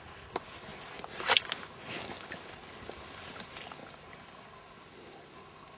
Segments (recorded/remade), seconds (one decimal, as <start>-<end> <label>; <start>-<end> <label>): 0.0-5.8 recorded